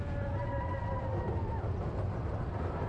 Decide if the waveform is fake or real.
real